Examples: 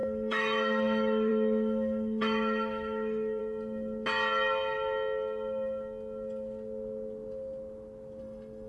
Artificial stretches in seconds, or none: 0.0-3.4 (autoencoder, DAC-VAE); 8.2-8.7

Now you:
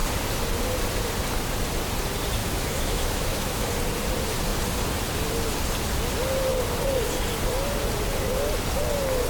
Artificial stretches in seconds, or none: 2.4-3.7 (autoencoder, DAC-VAE)

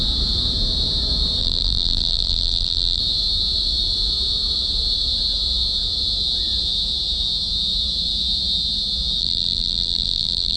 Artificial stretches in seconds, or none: 1.4-3.0 (vocoder, BigVGAN v2); 9.2-10.6

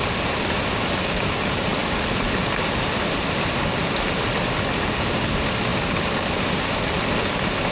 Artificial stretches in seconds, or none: none

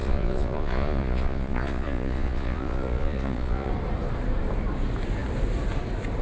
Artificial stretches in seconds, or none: 0.0-3.7 (vocoder, Vocos)

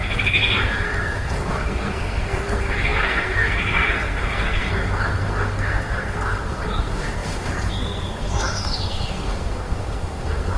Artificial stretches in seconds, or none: 0.0-10.6 (codec, SNAC)

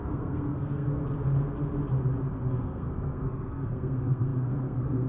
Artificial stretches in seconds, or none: 0.0-1.0 (codec, SNAC); 2.6-5.1

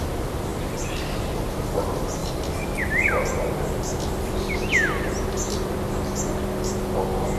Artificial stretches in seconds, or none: 0.5-1.5 (vocoder, BigVGAN v2); 2.2-3.1; 3.9-4.6